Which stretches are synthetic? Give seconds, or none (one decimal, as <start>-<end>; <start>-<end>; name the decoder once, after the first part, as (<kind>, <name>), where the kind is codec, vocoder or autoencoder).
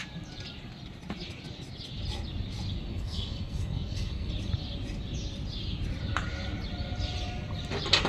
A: 2.9-4.3 (codec, SNAC)